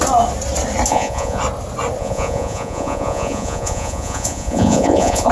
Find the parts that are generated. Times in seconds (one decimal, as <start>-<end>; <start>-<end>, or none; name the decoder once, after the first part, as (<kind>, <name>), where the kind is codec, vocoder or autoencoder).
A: 0.9-1.4 (vocoder, Vocos); 2.0-5.3